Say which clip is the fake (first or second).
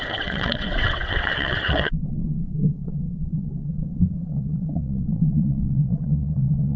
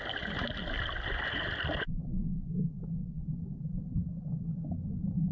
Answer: first